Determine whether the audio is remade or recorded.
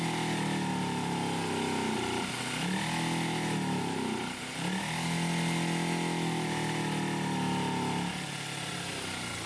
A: recorded